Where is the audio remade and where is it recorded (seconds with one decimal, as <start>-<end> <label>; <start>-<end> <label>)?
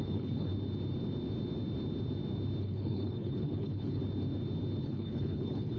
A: 0.0-0.5 remade; 0.5-2.6 recorded; 2.6-4.0 remade; 4.0-4.8 recorded; 4.8-5.8 remade